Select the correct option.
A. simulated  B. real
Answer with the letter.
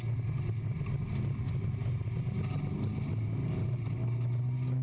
B